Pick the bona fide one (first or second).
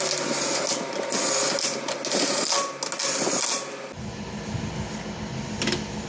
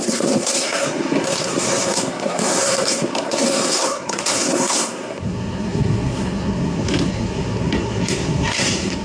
first